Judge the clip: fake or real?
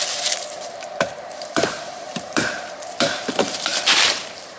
fake